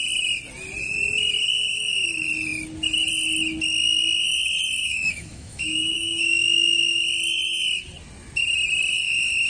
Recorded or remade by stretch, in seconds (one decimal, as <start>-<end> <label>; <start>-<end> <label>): 0.0-4.8 recorded; 4.8-7.0 remade; 7.0-9.5 recorded